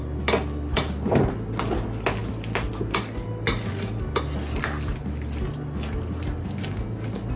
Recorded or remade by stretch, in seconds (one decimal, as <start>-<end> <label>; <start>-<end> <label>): 0.0-7.4 recorded